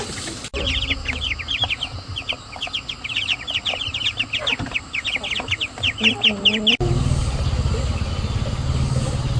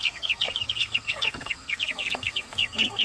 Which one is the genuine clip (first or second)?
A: first